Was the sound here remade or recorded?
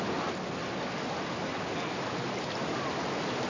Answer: recorded